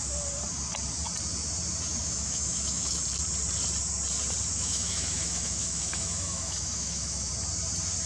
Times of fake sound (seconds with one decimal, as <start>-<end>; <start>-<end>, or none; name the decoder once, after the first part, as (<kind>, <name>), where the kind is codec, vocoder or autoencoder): 2.0-3.0 (autoencoder, DAC-VAE); 4.5-7.3